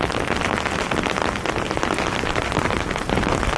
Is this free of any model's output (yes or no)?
yes